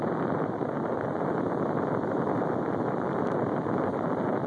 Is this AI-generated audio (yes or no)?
no